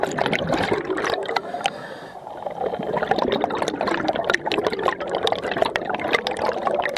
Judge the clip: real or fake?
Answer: real